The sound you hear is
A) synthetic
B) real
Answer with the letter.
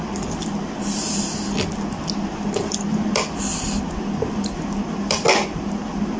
B